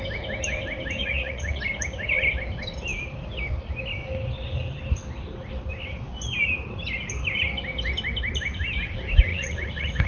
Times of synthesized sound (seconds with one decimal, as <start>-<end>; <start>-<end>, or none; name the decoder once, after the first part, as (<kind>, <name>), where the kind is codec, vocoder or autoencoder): 1.0-1.6 (vocoder, Vocos); 9.3-10.1